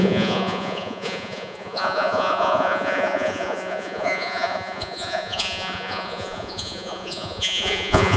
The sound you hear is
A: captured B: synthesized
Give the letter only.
B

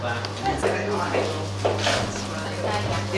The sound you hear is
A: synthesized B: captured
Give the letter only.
B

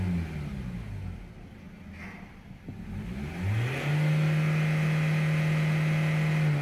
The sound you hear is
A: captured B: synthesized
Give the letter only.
A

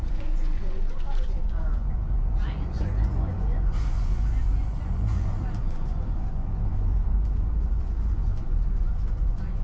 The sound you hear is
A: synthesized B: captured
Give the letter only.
A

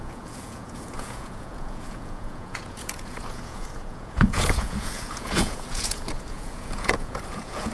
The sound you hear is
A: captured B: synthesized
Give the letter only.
B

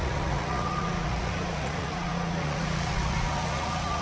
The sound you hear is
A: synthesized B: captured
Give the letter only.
A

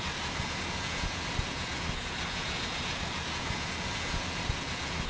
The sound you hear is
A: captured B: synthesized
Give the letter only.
B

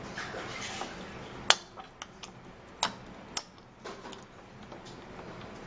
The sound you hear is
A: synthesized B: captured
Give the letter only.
B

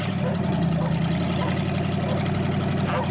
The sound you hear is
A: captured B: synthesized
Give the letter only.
A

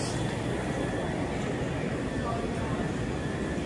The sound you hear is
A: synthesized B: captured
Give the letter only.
B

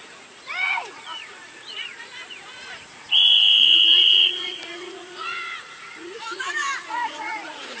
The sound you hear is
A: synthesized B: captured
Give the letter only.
A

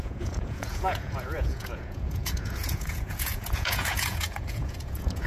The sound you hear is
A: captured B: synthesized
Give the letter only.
B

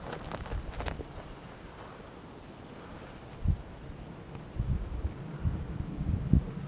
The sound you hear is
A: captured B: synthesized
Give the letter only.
A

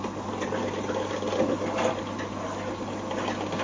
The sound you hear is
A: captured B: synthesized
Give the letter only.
A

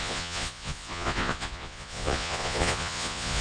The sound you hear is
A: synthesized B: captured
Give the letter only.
A